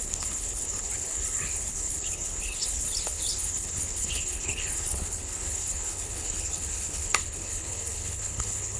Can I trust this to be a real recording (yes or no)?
no